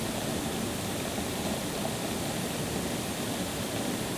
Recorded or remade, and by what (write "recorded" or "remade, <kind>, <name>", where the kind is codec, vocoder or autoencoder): recorded